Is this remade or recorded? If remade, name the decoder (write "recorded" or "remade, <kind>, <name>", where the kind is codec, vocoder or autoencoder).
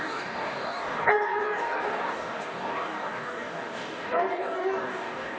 remade, codec, DAC